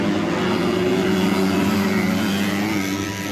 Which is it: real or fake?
real